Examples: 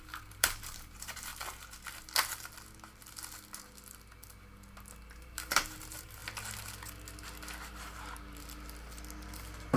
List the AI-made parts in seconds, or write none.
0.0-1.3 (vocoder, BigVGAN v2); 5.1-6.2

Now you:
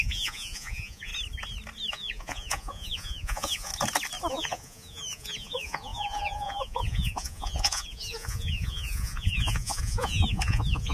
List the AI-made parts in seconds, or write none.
0.0-1.1 (vocoder, Vocos); 1.9-3.7; 4.3-10.9